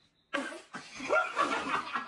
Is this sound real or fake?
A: real